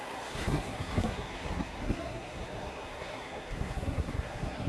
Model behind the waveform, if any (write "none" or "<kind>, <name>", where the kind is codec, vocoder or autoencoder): codec, SNAC